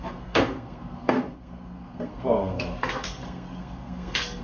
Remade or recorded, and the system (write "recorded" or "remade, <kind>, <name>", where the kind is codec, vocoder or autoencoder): remade, codec, SNAC